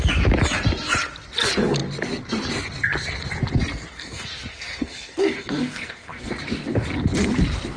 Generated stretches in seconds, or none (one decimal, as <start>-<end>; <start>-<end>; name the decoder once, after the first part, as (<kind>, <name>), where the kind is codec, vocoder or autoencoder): 3.9-6.3 (codec, SNAC)